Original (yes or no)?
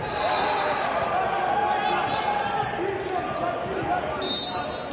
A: yes